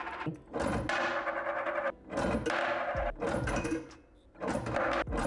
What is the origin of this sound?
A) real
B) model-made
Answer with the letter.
A